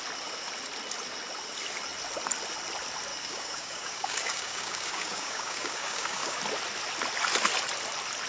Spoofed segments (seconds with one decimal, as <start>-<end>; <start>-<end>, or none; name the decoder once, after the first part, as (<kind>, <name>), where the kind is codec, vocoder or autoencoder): 3.1-6.4 (codec, DAC)